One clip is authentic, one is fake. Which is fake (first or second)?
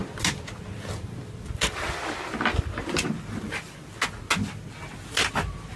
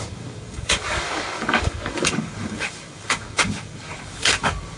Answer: second